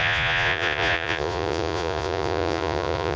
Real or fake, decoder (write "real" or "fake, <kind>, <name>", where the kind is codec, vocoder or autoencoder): fake, vocoder, Vocos